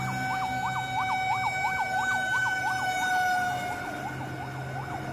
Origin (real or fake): real